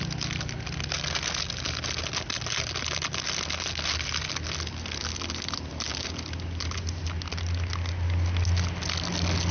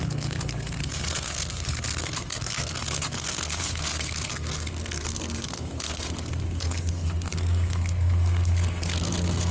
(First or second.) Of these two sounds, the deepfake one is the second